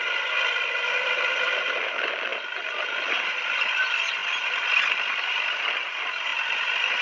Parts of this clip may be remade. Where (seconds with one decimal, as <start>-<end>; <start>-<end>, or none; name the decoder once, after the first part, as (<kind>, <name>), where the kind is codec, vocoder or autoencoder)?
none